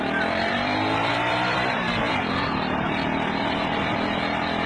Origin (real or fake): fake